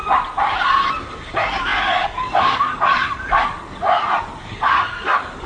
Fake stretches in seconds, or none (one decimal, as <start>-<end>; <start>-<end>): 0.9-5.5